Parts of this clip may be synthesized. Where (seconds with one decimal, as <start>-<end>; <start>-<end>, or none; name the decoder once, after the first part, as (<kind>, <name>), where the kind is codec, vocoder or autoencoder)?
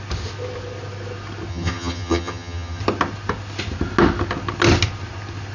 1.5-2.8 (vocoder, HiFi-GAN)